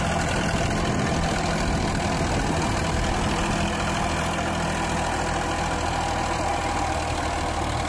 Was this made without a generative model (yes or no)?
yes